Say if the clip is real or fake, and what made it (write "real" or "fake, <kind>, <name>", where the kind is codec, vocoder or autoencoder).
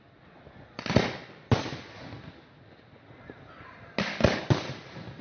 real